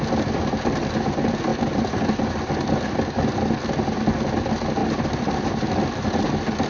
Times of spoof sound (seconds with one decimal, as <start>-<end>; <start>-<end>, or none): 1.5-2.5; 4.8-5.9

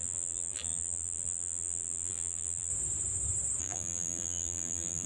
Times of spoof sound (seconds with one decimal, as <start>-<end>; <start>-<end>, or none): 0.0-2.7; 3.6-5.1

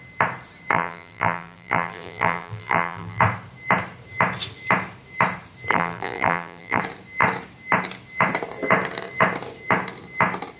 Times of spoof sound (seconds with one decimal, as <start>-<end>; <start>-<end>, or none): 0.7-3.2; 5.7-6.8

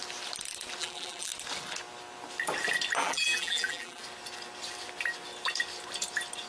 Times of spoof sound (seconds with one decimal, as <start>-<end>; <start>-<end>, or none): 0.8-1.3; 3.0-4.0